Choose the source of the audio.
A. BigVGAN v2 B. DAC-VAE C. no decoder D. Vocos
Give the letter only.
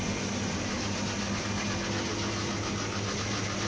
C